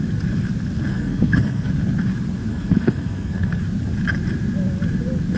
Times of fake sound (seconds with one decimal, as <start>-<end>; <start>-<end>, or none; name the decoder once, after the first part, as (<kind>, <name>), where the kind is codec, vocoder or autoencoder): 0.9-1.7 (codec, SNAC); 2.5-3.6